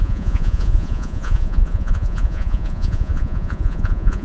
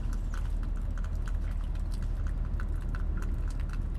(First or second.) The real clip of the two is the second